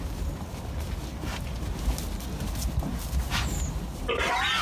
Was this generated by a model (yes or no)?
no